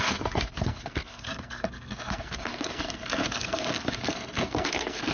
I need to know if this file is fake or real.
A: fake